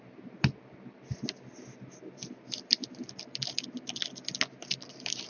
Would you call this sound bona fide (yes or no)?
yes